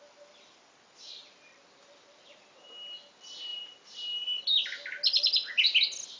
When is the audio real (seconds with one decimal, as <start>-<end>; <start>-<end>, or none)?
0.0-6.2